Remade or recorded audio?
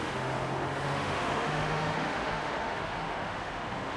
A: remade